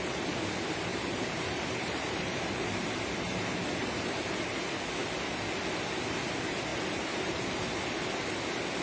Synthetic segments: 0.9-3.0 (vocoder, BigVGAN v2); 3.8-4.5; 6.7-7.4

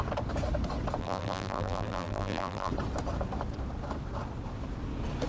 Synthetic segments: 1.0-2.7 (vocoder, BigVGAN v2)

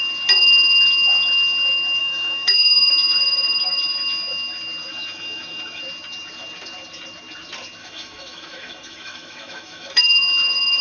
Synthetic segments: 2.0-2.9 (autoencoder, DAC-VAE); 4.9-5.8; 7.8-10.2

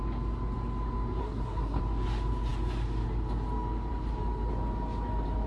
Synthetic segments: 1.2-1.8 (codec, SNAC)

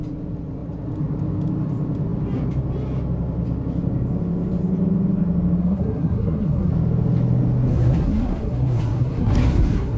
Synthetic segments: 5.6-6.7 (codec, SNAC); 7.7-10.0

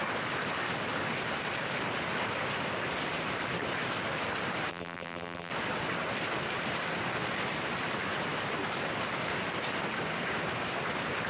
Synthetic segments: 4.7-5.5 (vocoder, BigVGAN v2)